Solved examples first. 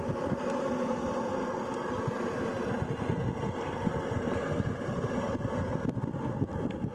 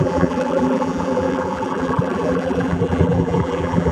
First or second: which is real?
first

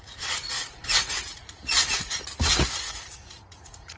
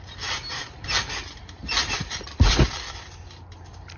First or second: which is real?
second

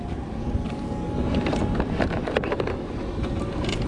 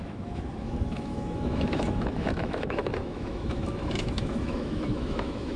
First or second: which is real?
first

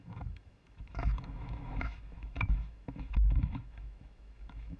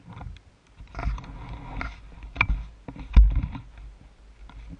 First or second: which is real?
second